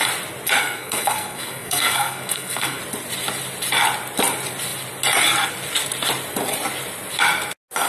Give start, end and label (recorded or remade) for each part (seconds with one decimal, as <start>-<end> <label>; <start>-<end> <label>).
0.0-0.6 recorded; 0.6-2.8 remade; 2.8-7.9 recorded